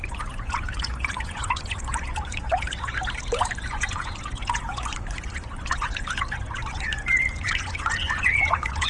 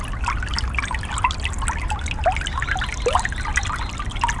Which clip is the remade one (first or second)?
first